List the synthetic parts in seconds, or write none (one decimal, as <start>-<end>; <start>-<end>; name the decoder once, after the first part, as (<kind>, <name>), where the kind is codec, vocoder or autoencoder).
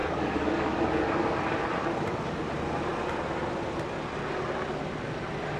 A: 0.0-1.4 (codec, DAC); 1.8-2.5